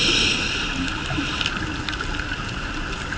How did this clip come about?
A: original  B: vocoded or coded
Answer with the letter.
A